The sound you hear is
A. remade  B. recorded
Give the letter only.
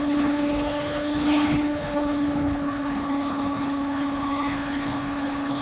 A